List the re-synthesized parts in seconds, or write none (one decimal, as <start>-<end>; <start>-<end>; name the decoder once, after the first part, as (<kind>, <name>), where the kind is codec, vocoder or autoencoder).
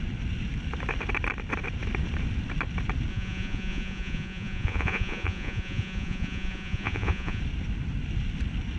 3.1-7.4 (vocoder, Vocos)